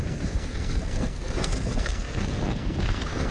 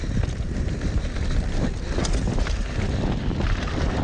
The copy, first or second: first